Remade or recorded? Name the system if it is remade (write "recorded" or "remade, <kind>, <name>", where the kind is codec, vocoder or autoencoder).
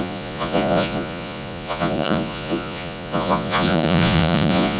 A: remade, vocoder, Vocos